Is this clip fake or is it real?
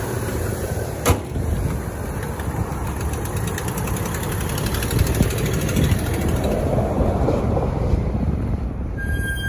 real